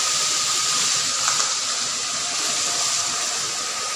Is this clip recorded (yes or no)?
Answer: yes